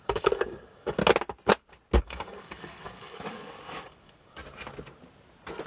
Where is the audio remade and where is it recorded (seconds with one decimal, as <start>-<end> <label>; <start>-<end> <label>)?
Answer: 0.0-1.0 remade; 1.0-2.0 recorded; 2.0-4.4 remade; 4.4-5.7 recorded